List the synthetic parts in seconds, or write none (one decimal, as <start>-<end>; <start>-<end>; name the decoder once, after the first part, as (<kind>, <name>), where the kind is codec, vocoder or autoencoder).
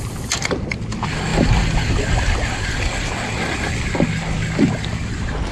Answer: none